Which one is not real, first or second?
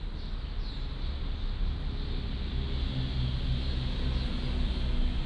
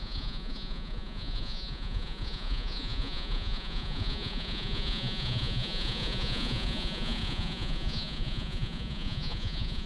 second